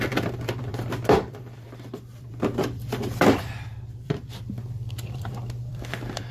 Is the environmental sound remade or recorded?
remade